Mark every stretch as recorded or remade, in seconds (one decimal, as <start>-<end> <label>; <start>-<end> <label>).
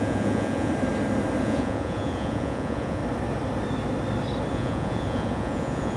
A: 0.0-0.7 remade; 0.7-1.4 recorded; 1.4-3.0 remade; 3.0-4.5 recorded; 4.5-6.0 remade